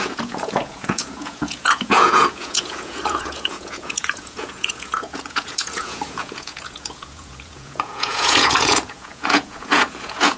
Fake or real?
fake